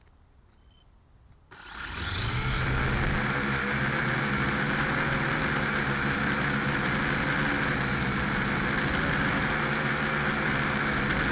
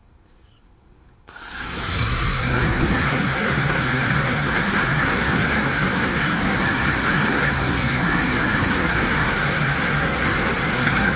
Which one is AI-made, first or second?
second